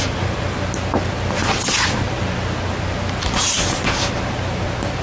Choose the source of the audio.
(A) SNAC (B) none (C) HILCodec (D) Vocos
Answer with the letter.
B